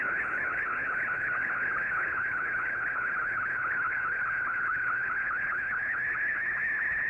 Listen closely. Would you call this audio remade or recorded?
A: remade